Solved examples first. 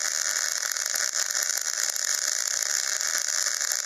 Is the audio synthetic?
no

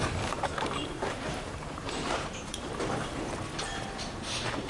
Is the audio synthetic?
yes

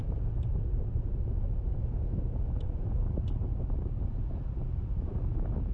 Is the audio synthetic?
yes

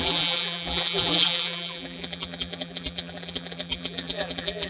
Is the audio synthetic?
yes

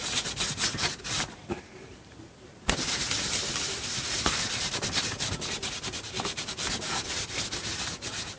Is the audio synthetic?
yes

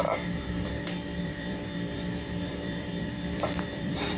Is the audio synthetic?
yes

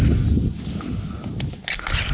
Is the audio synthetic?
no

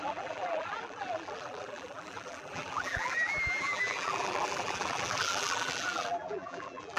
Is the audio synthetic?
yes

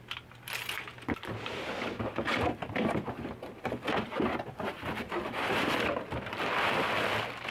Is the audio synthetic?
no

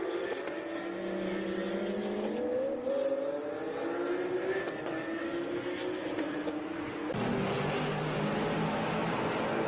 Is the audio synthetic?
no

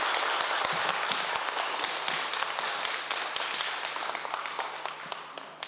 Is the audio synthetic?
no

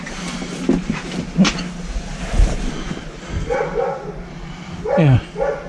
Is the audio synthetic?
no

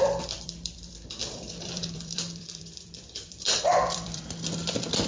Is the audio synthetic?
yes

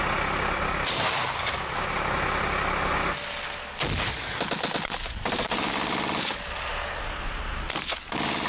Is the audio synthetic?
no